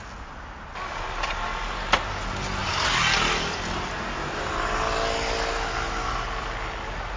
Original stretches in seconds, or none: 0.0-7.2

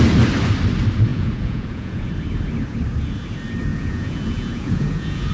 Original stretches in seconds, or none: 0.0-1.1; 2.1-3.7

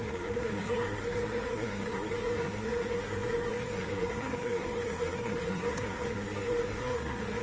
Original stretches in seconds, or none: none

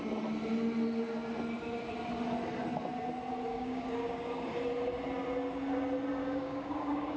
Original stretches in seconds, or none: 0.0-3.5; 4.5-6.2

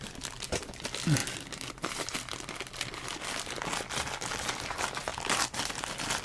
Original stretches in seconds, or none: 0.0-6.2

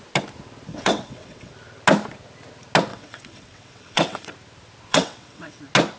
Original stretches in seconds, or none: 0.0-0.7; 1.5-2.9; 4.3-4.9; 5.6-6.0